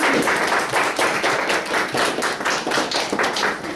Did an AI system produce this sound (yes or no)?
no